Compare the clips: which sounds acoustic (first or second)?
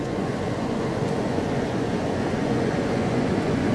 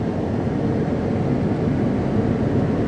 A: second